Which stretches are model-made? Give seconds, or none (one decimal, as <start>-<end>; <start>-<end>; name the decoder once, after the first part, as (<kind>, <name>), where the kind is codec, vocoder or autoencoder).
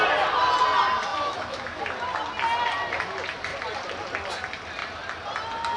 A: 1.1-1.8 (autoencoder, DAC-VAE)